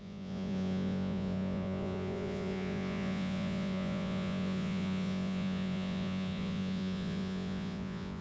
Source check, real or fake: fake